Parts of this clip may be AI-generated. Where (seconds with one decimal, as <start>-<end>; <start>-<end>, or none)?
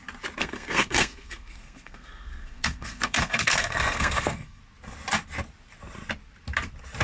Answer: 0.4-4.6